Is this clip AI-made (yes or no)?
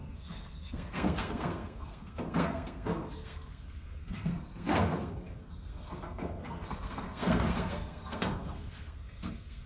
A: yes